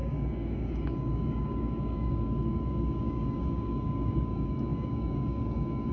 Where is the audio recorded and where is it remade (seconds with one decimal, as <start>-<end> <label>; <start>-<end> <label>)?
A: 0.0-5.9 remade